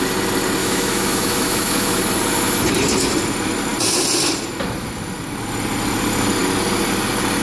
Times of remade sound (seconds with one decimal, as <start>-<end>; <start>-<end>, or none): 0.6-2.0